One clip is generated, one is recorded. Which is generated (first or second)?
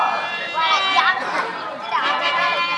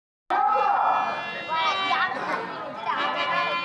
first